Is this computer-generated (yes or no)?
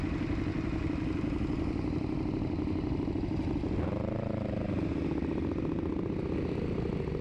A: no